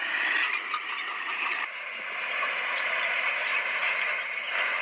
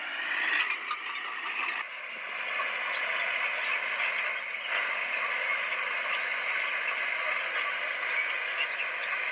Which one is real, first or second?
second